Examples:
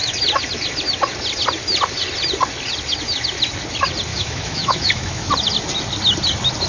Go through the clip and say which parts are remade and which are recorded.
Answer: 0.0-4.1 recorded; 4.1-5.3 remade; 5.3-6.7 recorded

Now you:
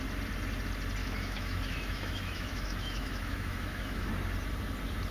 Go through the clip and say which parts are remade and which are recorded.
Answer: 0.0-1.0 recorded; 1.0-4.1 remade; 4.1-5.1 recorded

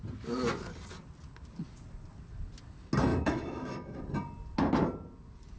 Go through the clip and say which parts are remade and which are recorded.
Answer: 0.0-3.1 recorded; 3.1-4.0 remade; 4.0-5.6 recorded